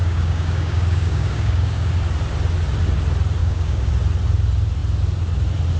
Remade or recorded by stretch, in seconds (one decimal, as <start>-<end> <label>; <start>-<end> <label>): 0.0-1.9 remade; 1.9-3.4 recorded; 3.4-3.9 remade; 3.9-5.8 recorded